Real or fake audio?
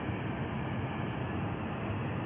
real